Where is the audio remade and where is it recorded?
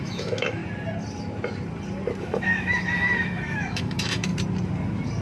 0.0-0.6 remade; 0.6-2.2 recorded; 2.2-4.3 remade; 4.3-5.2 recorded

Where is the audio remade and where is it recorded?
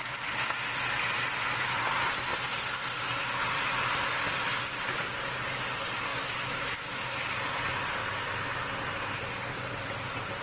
0.0-6.1 recorded; 6.1-7.2 remade; 7.2-10.4 recorded